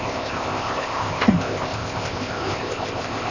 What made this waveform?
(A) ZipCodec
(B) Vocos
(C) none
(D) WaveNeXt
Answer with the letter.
A